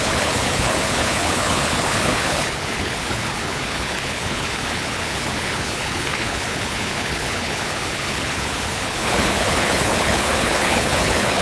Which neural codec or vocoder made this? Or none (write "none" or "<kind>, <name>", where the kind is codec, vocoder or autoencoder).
codec, HILCodec